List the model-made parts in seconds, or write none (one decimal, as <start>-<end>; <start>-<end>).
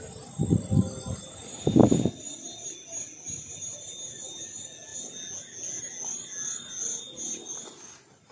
none